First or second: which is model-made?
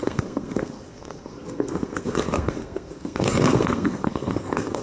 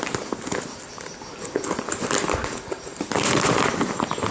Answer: first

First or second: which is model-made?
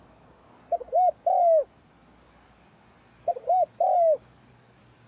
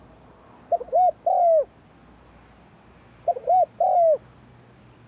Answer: first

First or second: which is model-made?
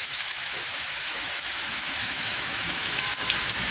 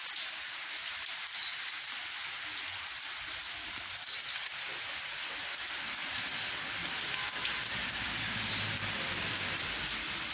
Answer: first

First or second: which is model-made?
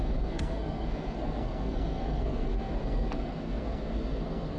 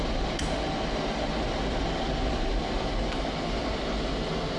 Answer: first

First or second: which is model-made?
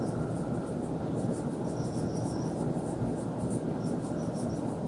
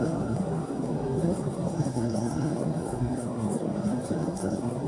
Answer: second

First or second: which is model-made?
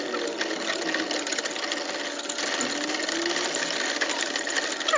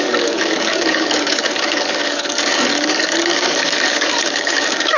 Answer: second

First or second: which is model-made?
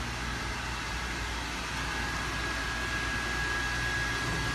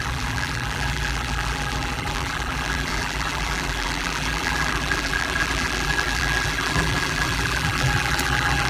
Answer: second